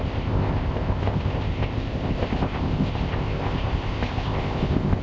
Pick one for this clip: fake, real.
fake